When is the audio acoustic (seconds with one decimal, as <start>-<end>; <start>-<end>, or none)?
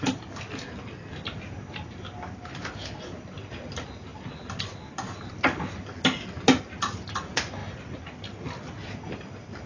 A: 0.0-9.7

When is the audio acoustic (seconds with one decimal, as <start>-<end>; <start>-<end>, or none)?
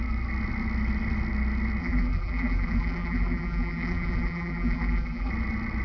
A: 0.0-1.8; 5.3-5.8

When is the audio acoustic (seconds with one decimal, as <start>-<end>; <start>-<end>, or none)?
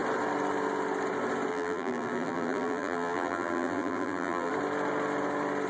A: 0.0-1.5; 4.5-5.7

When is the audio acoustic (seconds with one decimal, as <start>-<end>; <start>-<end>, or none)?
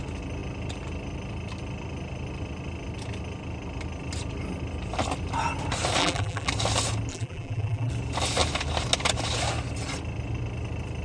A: 0.0-6.0; 6.5-7.1; 7.9-11.0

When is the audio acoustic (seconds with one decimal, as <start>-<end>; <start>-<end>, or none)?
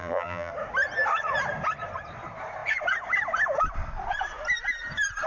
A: 0.5-5.3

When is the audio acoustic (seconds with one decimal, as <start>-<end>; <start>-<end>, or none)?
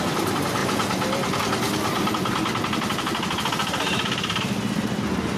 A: 0.0-3.6; 4.4-5.4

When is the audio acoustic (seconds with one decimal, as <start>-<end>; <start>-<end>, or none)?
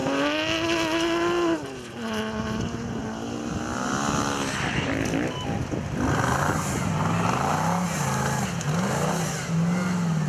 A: 0.0-10.3